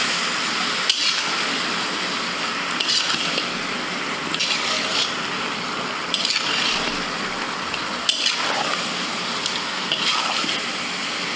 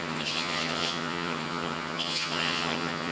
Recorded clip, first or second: first